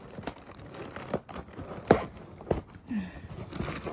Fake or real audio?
real